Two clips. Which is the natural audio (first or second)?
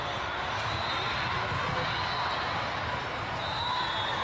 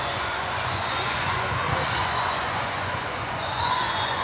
first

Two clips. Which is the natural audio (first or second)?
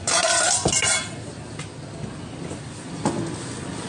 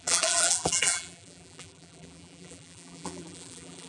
first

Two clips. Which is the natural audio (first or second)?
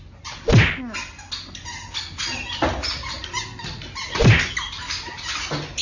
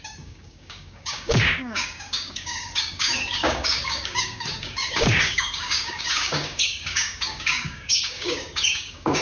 first